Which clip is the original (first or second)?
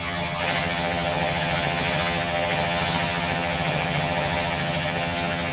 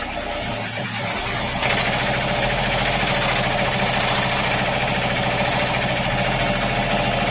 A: second